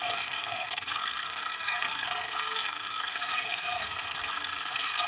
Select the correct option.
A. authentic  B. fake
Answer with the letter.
B